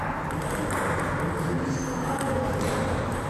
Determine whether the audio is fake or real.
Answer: real